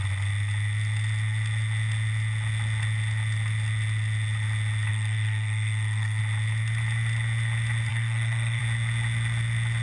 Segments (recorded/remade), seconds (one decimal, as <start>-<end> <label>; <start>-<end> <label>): 0.0-4.9 recorded; 4.9-6.2 remade; 6.2-7.9 recorded; 7.9-8.6 remade; 8.6-9.8 recorded

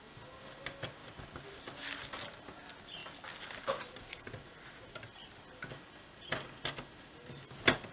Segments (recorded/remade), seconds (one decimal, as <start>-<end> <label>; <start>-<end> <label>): 0.0-7.9 recorded

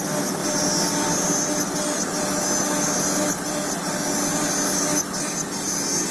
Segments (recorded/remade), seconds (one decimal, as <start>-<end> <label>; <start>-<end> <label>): 0.0-6.1 recorded

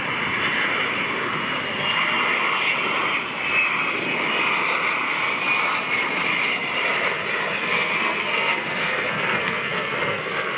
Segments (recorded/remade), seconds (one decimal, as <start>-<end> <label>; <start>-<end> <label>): 0.0-7.6 recorded; 7.6-10.6 remade